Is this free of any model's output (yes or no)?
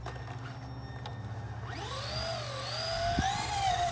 yes